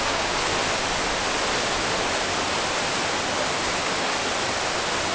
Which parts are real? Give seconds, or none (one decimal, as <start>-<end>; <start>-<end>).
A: 0.5-3.6; 4.1-5.1